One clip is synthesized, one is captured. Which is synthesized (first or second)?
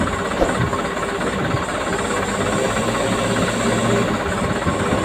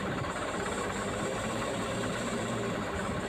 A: second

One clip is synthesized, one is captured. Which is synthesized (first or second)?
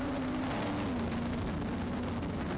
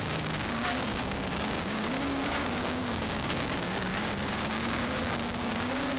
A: second